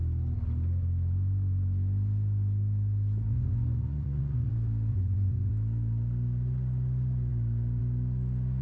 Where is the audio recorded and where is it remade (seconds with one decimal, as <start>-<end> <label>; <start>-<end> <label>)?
0.0-3.3 recorded; 3.3-4.5 remade; 4.5-4.9 recorded; 4.9-5.5 remade; 5.5-8.6 recorded